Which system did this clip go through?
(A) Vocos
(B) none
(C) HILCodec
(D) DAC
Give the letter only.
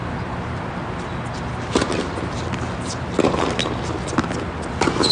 B